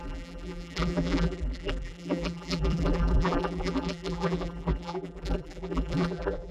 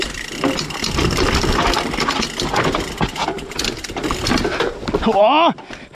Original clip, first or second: second